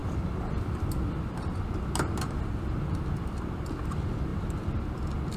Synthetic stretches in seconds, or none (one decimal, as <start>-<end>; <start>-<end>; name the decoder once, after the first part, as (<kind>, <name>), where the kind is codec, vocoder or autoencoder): none